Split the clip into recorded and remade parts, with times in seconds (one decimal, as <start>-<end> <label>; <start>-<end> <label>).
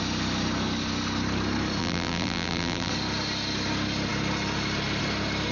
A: 0.0-1.8 recorded; 1.8-2.9 remade; 2.9-5.5 recorded